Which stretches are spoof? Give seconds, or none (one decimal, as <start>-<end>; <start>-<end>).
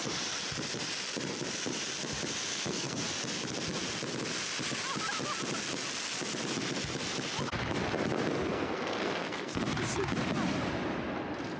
2.5-3.0; 8.5-9.6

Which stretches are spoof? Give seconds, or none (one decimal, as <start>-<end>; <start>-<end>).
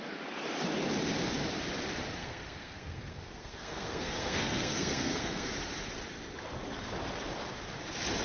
2.2-5.5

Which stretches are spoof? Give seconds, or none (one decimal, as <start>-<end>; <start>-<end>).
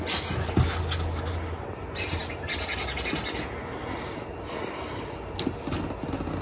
none